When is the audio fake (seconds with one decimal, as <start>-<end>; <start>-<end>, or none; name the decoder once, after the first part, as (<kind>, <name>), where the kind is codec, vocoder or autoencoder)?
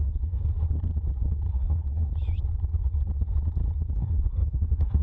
0.0-0.4 (codec, SNAC); 1.5-2.1; 3.9-5.0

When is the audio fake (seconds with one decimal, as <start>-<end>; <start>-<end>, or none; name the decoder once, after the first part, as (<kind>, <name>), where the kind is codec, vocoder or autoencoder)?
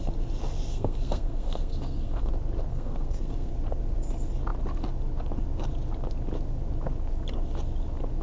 0.7-2.3 (codec, SNAC); 2.7-3.5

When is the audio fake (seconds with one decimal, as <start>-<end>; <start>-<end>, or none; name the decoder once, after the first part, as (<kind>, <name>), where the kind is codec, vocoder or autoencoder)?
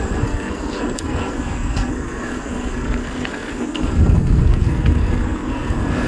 0.0-6.1 (codec, SNAC)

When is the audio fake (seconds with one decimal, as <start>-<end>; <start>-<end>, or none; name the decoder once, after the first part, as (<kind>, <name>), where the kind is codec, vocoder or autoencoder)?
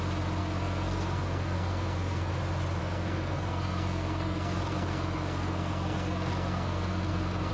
0.4-2.3 (codec, SNAC); 2.8-7.5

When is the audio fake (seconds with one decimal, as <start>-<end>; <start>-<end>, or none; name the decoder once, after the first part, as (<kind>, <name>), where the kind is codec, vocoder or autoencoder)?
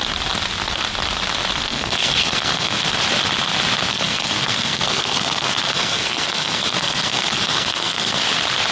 1.6-2.8 (codec, SNAC); 3.9-8.2